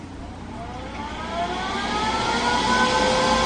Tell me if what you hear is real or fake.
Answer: real